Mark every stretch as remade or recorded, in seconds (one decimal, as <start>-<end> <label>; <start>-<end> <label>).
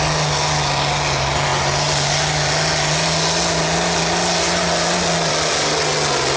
0.0-6.4 recorded